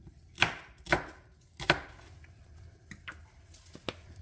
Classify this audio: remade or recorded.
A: recorded